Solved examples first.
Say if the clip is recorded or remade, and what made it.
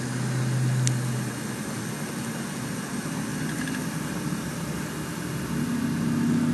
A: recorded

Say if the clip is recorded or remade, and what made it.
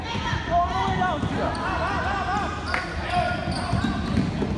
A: recorded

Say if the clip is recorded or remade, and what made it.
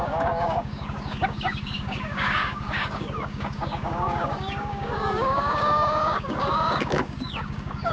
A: remade, codec, DAC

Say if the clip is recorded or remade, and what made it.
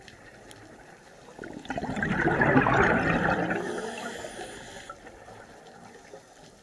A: recorded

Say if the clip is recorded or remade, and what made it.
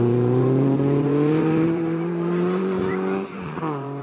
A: remade, vocoder, Vocos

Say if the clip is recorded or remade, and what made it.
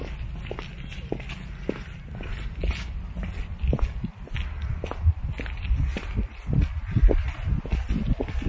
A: recorded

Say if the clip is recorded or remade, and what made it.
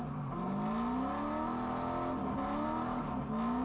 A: recorded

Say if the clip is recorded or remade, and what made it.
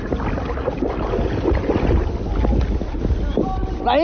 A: recorded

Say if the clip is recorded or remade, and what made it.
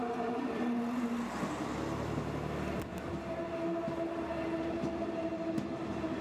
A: recorded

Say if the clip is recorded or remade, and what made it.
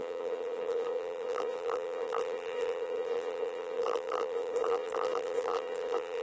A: remade, vocoder, BigVGAN v2